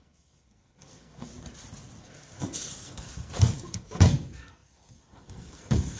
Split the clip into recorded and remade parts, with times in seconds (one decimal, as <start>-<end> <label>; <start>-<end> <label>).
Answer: 0.0-1.3 remade; 1.3-2.0 recorded; 2.0-6.0 remade